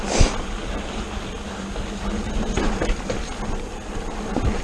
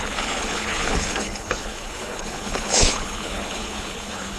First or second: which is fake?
second